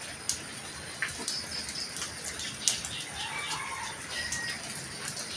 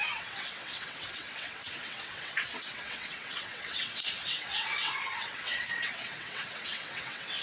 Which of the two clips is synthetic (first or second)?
second